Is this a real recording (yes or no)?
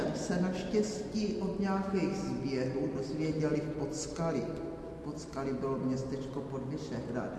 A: yes